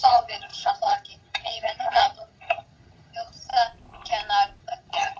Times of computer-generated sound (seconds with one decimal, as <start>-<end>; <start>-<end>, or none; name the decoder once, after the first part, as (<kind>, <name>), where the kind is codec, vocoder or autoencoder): 0.0-3.5 (vocoder, HiFi-GAN); 4.6-5.2